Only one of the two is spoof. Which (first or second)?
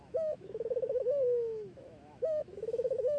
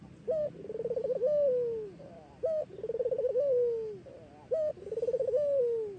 first